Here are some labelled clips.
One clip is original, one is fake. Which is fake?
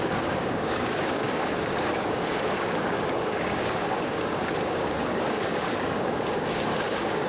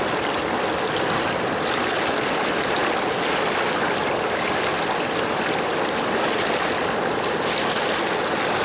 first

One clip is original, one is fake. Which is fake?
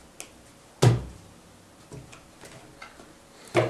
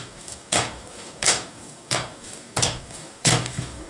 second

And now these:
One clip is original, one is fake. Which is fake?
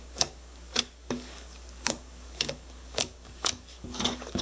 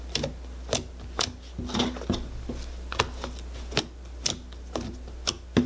first